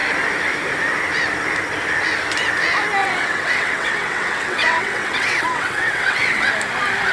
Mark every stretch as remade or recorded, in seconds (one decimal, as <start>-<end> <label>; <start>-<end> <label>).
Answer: 0.0-3.0 recorded; 3.0-6.5 remade; 6.5-7.1 recorded